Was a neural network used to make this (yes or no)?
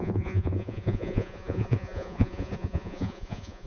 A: yes